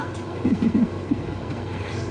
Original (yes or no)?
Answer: no